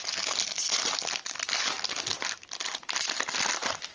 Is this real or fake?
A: real